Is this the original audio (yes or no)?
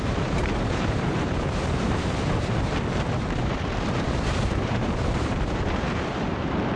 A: no